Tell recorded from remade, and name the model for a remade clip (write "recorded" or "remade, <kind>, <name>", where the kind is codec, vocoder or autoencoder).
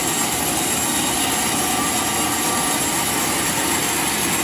recorded